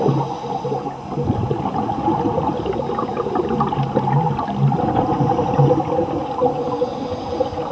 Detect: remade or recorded recorded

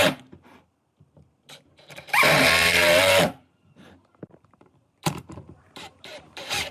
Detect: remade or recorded remade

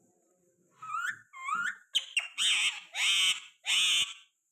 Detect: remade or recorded recorded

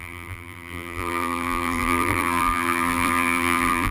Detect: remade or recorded remade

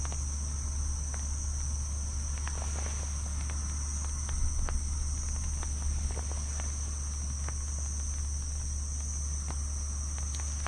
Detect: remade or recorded recorded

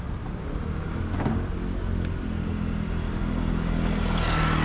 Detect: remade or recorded recorded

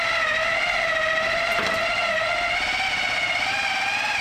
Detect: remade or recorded recorded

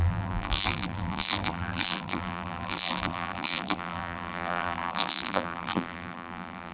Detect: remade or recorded remade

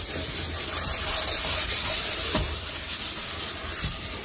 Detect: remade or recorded remade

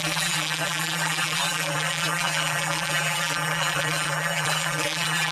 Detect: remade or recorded remade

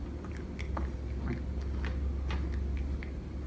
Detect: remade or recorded recorded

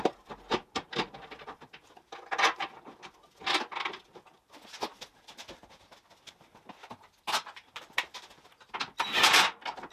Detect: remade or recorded recorded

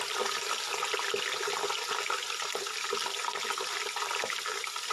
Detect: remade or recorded recorded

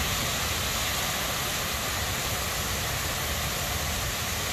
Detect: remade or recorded recorded